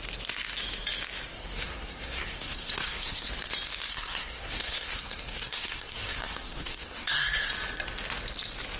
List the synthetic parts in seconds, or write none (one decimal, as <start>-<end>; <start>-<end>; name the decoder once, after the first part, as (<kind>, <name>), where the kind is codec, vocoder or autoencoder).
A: 1.3-3.3 (codec, SNAC); 3.9-7.5